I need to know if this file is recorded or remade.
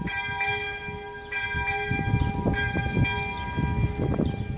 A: recorded